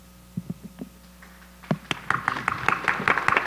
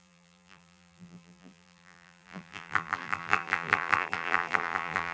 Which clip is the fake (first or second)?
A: second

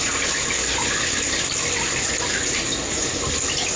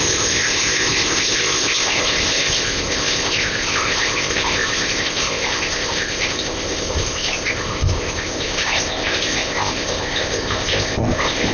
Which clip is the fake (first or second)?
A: second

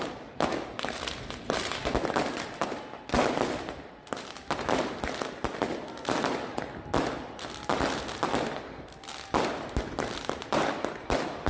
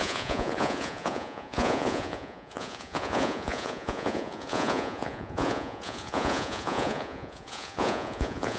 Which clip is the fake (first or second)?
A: second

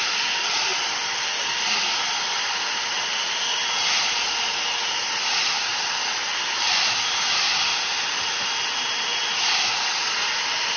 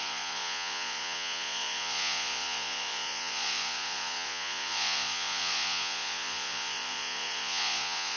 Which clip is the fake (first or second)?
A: second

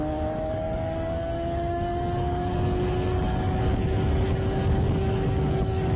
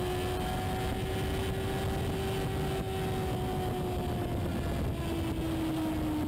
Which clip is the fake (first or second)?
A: first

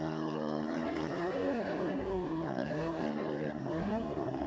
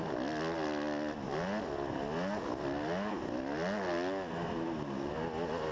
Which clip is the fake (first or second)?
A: first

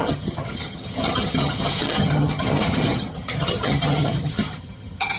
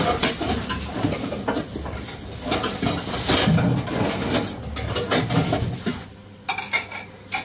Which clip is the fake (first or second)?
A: first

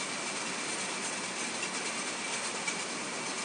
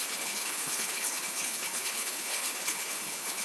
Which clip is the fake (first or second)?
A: second